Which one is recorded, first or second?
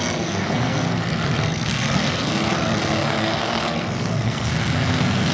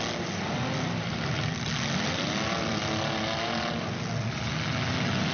second